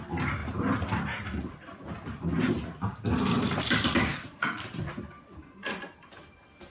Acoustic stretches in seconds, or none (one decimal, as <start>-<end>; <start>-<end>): 0.0-6.7